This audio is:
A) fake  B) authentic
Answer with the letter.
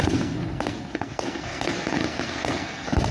A